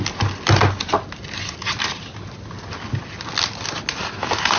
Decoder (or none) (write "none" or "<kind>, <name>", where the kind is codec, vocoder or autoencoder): none